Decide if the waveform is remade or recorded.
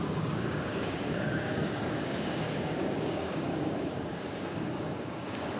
remade